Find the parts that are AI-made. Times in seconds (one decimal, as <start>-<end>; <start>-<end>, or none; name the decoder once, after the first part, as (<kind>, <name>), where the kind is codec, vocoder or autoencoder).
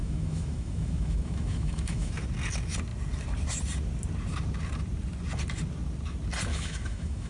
0.0-2.1 (autoencoder, DAC-VAE); 6.5-7.3